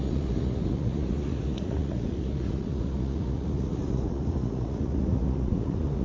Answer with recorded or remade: remade